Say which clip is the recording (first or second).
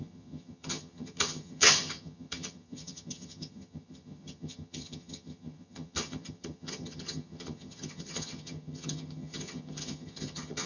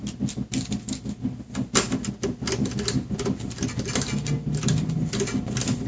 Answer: second